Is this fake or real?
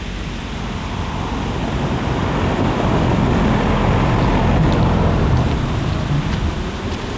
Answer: fake